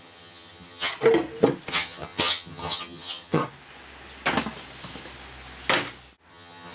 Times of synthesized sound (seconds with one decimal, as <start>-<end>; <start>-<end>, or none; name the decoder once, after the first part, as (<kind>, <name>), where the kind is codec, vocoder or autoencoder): 0.0-0.9 (vocoder, HiFi-GAN); 1.7-3.4; 6.3-6.7